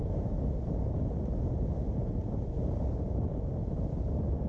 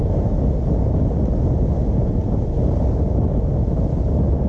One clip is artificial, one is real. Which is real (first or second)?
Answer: second